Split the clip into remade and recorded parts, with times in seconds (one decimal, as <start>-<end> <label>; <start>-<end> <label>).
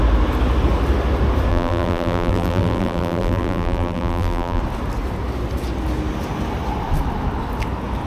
0.0-1.5 recorded; 1.5-4.6 remade; 4.6-8.1 recorded